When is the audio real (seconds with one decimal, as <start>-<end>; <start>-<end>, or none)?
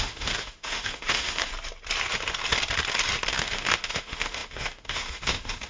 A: 1.5-3.3